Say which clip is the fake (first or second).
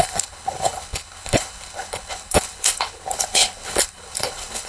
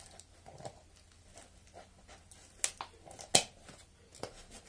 first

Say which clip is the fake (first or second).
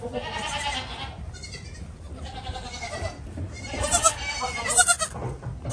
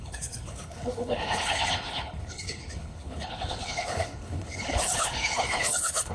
second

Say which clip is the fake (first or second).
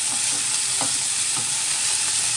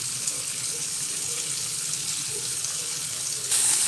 second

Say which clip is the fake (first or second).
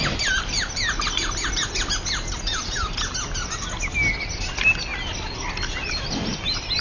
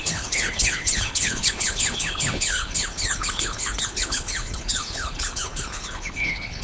second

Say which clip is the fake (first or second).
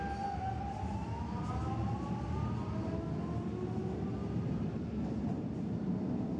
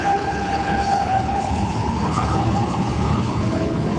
second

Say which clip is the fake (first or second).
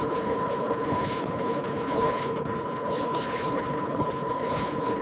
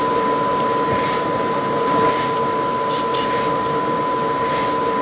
first